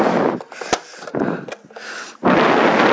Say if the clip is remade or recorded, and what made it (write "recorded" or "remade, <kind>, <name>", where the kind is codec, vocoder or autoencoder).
recorded